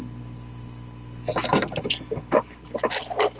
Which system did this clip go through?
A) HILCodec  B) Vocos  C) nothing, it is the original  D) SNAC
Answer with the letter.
C